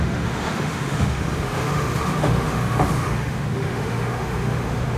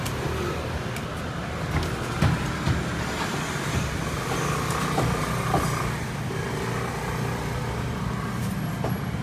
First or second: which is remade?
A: first